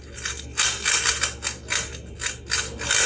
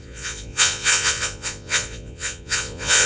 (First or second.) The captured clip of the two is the first